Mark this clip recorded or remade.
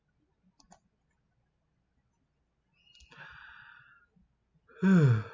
recorded